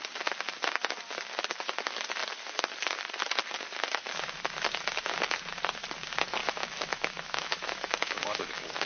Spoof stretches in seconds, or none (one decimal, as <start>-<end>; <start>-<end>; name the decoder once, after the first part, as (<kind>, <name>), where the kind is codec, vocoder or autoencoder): 6.4-8.9 (autoencoder, DAC-VAE)